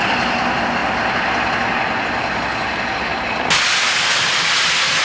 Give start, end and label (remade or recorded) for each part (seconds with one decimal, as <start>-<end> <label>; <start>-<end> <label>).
0.0-5.0 recorded